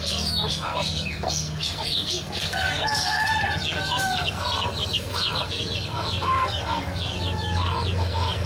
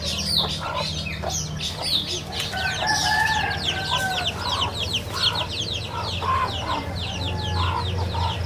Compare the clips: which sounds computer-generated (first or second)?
first